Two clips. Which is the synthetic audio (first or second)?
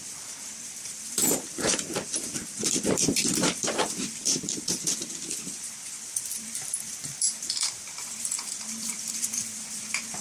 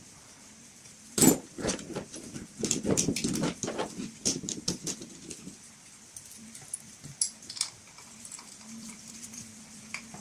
first